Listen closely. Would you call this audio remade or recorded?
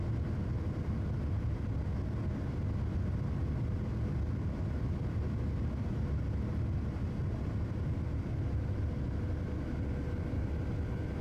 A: recorded